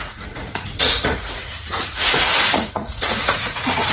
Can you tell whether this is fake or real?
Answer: fake